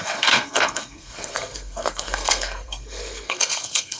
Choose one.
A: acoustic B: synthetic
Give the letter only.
B